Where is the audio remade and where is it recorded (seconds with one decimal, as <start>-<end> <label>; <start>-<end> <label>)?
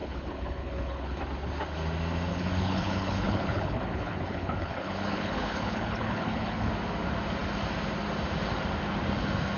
0.0-1.2 remade; 1.2-2.3 recorded; 2.3-6.7 remade; 6.7-9.6 recorded